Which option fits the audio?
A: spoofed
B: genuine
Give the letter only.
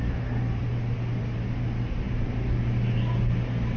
B